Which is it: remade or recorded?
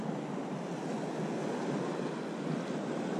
recorded